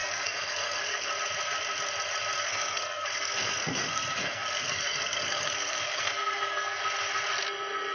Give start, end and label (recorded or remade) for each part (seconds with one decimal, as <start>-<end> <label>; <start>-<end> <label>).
0.0-1.1 remade; 1.1-2.4 recorded; 2.4-6.8 remade; 6.8-7.9 recorded